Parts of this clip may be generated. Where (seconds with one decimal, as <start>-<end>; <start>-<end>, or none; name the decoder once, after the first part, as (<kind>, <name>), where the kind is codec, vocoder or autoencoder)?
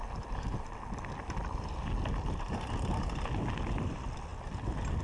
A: none